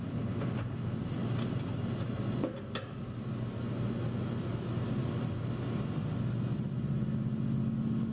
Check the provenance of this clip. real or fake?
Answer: real